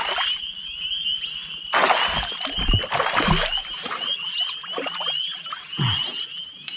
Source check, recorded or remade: recorded